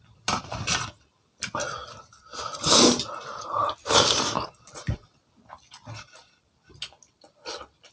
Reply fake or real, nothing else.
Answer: real